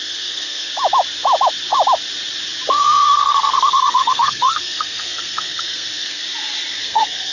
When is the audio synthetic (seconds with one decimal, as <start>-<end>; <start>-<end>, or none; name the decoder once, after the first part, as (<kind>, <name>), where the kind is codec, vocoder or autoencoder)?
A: 0.0-0.7 (codec, SNAC); 2.7-6.2; 6.8-7.3

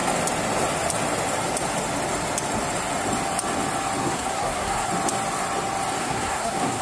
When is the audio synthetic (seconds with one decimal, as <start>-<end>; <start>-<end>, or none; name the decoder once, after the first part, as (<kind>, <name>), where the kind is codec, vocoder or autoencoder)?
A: 4.0-4.9 (codec, SNAC); 6.0-6.8